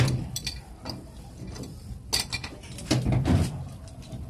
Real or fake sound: real